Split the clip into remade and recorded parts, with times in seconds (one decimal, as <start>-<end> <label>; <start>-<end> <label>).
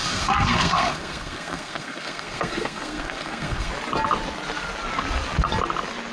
0.0-3.7 remade; 3.7-6.1 recorded